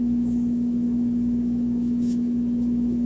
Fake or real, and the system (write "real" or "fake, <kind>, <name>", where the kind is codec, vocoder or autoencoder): fake, autoencoder, DAC-VAE